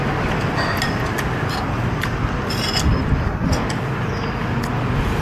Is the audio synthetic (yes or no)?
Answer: no